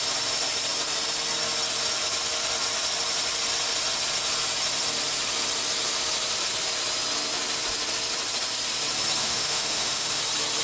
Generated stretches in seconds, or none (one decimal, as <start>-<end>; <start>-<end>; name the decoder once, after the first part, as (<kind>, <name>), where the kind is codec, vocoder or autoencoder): 9.2-10.2 (autoencoder, DAC-VAE)